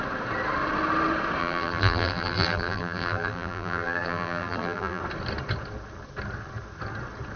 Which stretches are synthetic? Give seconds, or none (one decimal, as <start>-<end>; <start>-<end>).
1.4-5.0

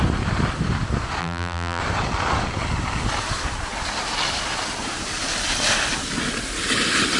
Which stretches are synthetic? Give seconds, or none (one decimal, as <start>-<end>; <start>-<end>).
1.2-1.8

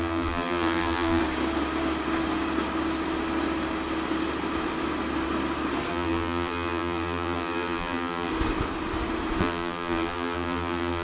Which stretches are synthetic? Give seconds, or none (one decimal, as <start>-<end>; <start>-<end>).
0.0-1.2; 5.9-8.3; 9.4-11.0

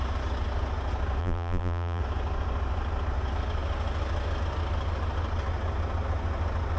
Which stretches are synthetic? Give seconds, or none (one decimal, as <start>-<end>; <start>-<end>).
1.2-2.0

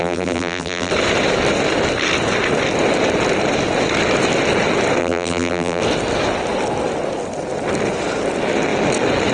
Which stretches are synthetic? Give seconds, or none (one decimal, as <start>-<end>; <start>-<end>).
0.0-0.9; 5.0-5.8

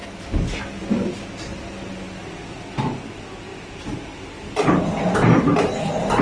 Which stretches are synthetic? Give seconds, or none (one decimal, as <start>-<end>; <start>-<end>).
none

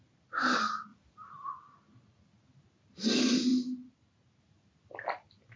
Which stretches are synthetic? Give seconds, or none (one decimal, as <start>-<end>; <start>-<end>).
none

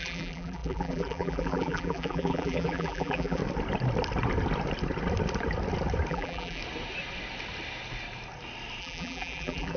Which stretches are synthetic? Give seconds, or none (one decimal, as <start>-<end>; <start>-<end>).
0.0-3.4; 6.1-6.6; 8.8-9.8